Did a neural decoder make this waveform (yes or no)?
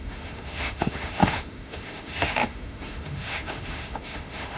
yes